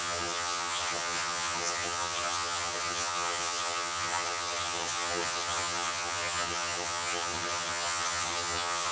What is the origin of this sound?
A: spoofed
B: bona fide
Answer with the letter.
A